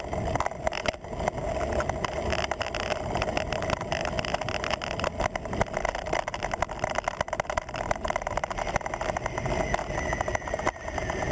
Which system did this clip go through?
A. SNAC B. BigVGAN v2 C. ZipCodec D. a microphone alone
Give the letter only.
D